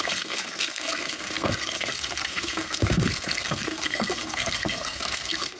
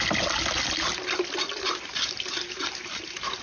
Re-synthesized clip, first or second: first